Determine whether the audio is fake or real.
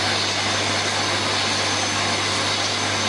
real